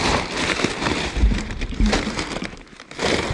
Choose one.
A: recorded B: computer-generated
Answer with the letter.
B